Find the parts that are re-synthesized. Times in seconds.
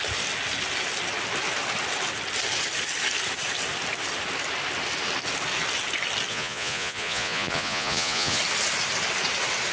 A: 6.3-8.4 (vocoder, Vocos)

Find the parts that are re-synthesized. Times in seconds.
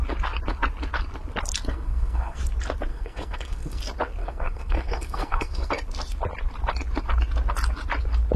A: 1.7-2.4 (codec, SNAC); 2.9-3.8; 4.2-5.7